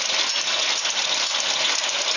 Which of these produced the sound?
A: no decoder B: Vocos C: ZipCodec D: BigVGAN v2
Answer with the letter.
A